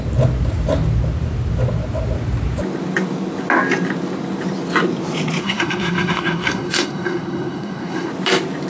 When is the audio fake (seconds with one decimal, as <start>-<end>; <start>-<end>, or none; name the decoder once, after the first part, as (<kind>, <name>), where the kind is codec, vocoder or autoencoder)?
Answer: 5.4-8.1 (codec, SNAC)